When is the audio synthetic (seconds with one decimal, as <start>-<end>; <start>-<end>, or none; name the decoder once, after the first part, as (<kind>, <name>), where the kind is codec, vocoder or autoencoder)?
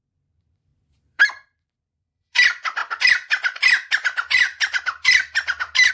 0.0-5.9 (vocoder, BigVGAN v2)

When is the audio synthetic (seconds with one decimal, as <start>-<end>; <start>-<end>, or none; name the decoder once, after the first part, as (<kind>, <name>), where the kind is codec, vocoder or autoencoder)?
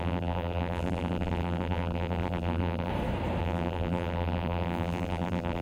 0.0-2.9 (vocoder, BigVGAN v2); 3.4-5.6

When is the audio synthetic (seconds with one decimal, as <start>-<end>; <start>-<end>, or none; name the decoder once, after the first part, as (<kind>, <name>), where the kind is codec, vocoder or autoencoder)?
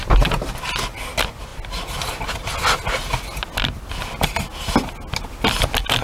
none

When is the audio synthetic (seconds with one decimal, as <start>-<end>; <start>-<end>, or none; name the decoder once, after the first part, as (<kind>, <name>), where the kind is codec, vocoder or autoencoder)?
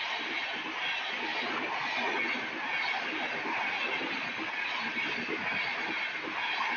none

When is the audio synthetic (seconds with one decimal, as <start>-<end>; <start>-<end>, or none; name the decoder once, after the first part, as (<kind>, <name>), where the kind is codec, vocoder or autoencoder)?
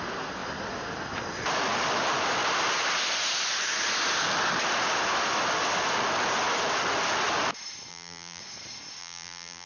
7.9-8.4 (vocoder, BigVGAN v2); 9.0-9.7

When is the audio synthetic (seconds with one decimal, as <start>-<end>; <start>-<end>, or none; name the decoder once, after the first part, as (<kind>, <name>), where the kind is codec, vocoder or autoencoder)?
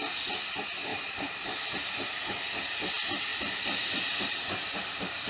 0.9-1.9 (vocoder, BigVGAN v2); 3.3-5.3